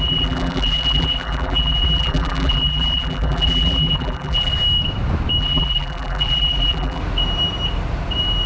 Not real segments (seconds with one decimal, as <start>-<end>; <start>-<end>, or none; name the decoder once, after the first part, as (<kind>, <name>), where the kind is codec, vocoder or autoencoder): 0.0-4.5 (vocoder, BigVGAN v2); 5.4-7.0